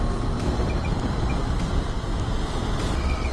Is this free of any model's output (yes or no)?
yes